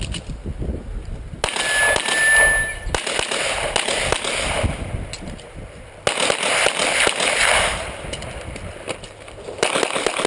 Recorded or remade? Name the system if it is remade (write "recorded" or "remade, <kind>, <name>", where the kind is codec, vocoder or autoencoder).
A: recorded